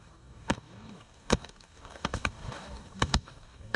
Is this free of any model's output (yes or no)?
no